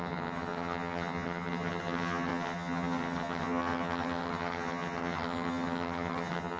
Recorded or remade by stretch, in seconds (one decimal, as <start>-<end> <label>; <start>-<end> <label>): 0.0-6.6 remade